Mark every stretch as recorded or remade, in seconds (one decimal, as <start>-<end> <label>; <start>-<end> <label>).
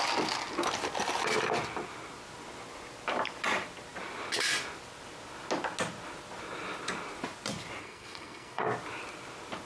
0.0-7.8 recorded; 7.8-8.6 remade; 8.6-9.7 recorded